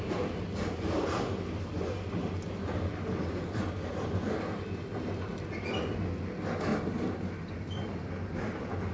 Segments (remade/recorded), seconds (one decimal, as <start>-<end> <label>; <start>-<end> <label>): 0.0-8.9 recorded